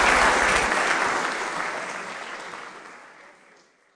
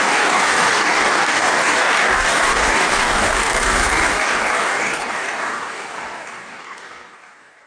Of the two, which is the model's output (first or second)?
second